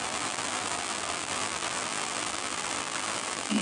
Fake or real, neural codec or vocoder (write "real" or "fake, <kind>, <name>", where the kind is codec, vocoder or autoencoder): fake, vocoder, BigVGAN v2